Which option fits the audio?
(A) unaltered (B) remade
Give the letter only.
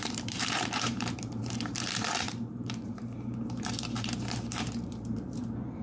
B